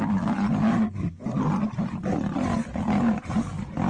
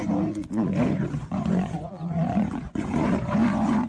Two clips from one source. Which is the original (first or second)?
first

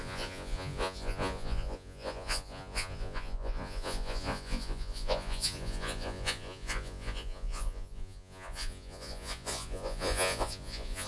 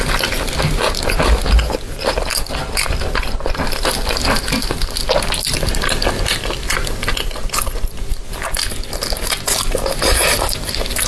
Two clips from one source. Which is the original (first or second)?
second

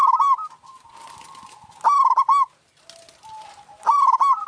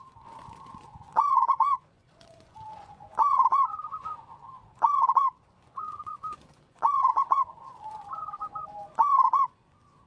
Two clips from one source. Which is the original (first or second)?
first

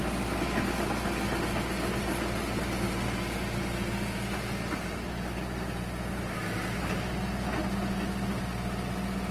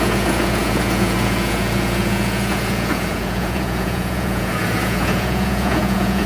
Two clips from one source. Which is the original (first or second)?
first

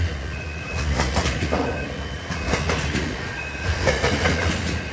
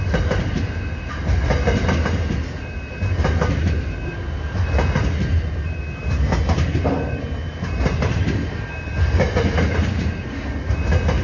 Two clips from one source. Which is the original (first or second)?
second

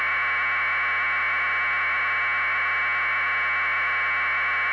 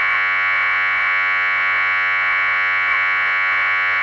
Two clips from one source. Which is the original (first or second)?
first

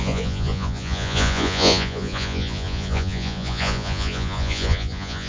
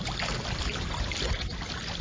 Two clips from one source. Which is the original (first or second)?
second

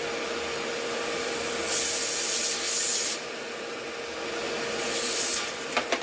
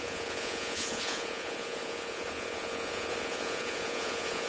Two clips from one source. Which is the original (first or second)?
first